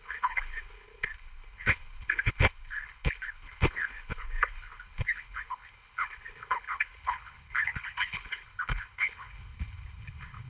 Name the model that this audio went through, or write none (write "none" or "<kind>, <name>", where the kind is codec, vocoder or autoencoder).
codec, HILCodec